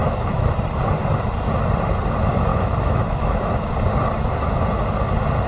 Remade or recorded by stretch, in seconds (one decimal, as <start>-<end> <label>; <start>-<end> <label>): 0.0-0.5 remade; 0.5-2.5 recorded; 2.5-3.7 remade; 3.7-5.5 recorded